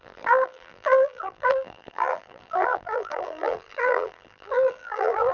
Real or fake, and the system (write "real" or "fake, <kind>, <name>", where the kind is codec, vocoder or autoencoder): fake, vocoder, BigVGAN v2